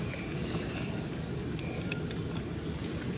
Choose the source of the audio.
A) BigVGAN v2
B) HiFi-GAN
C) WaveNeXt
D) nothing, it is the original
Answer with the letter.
D